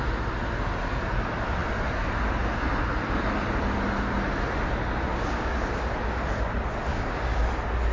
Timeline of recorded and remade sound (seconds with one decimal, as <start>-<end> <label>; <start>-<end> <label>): 0.0-5.1 recorded; 5.1-5.7 remade; 5.7-6.9 recorded; 6.9-7.4 remade; 7.4-7.9 recorded